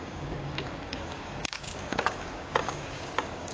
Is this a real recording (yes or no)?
no